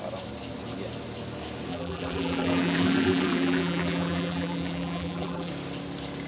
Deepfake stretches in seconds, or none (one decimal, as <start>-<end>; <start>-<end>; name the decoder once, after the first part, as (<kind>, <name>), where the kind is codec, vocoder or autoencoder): 1.7-5.5 (vocoder, BigVGAN v2)

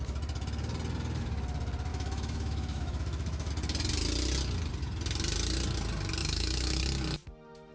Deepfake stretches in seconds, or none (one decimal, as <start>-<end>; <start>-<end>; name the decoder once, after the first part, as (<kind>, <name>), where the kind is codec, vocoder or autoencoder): 1.9-3.5 (autoencoder, DAC-VAE); 6.2-6.8

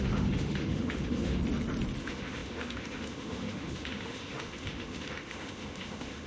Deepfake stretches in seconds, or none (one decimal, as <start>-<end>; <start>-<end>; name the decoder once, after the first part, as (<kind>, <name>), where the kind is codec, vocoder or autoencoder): 0.0-1.4 (autoencoder, DAC-VAE); 2.0-6.3

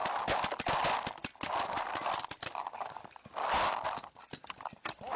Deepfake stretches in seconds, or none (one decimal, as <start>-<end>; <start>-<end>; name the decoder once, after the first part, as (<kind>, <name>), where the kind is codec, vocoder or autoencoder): none

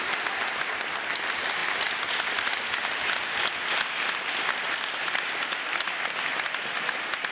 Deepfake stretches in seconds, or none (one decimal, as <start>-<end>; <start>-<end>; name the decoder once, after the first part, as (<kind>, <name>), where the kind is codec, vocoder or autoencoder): none

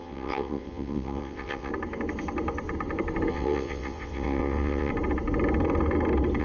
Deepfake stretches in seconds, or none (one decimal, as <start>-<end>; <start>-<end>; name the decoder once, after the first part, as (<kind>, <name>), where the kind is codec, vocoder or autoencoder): 0.0-1.7 (vocoder, WaveNeXt); 3.3-4.9

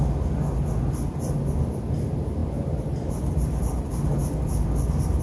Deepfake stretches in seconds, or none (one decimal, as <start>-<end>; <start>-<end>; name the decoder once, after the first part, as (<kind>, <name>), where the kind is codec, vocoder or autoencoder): none